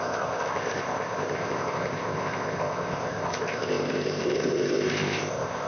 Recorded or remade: remade